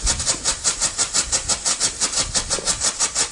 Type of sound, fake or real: fake